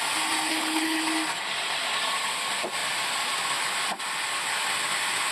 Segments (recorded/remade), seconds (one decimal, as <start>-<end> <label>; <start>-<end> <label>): 0.0-0.5 recorded; 0.5-1.0 remade; 1.0-5.3 recorded